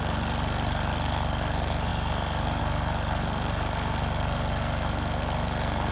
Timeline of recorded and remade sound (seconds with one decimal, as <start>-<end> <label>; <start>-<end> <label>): 0.0-5.9 remade